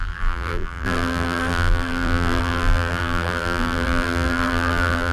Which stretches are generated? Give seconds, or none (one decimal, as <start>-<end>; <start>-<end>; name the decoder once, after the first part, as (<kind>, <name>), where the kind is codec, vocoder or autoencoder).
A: 0.0-5.1 (vocoder, BigVGAN v2)